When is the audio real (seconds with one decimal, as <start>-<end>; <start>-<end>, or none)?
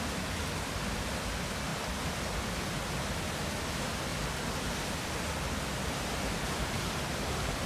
0.0-4.1